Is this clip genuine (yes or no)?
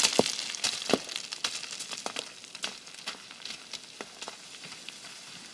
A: yes